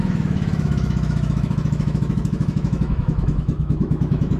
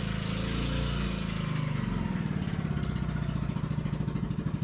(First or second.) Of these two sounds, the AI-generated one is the first